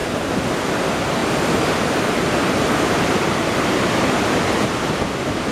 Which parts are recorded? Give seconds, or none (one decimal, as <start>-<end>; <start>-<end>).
0.0-1.2; 4.4-5.5